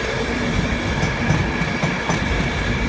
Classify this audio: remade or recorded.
recorded